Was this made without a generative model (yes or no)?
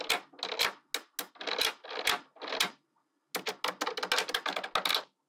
yes